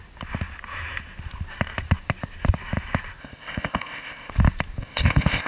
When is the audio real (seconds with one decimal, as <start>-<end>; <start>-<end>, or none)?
0.0-3.2; 4.3-4.8